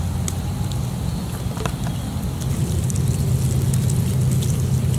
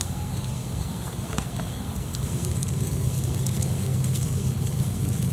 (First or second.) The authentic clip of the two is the first